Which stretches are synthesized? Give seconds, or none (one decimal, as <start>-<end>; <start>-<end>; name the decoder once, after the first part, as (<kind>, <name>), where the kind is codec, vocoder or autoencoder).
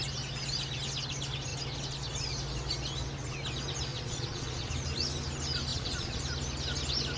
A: 3.9-4.7 (vocoder, Vocos); 5.7-6.2